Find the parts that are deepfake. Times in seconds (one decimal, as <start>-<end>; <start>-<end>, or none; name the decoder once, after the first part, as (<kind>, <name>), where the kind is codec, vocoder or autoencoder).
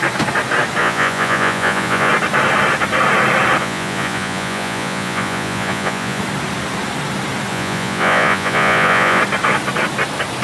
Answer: 0.8-2.1 (vocoder, Vocos); 3.6-6.2; 7.5-9.2